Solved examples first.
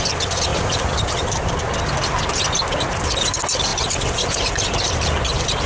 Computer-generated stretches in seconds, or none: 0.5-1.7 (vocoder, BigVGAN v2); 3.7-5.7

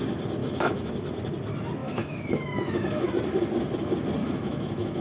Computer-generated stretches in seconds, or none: 0.4-0.9 (autoencoder, DAC-VAE); 1.8-3.1; 4.2-5.0

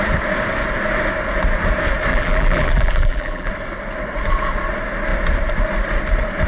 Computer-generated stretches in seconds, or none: 2.1-3.5 (vocoder, BigVGAN v2)

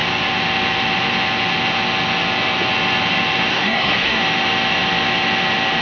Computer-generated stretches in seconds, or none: 3.5-4.2 (codec, SNAC)

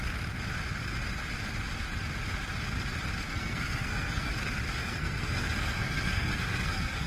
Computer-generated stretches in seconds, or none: 3.3-4.3 (codec, SNAC); 4.8-7.1

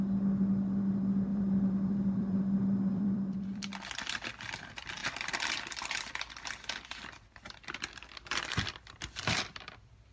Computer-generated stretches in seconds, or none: 1.3-2.4 (vocoder, BigVGAN v2); 2.9-3.7